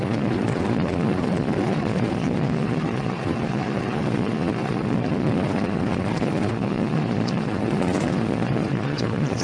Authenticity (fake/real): fake